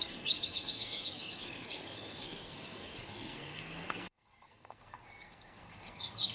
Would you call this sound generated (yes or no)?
yes